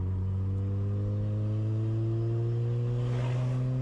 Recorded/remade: recorded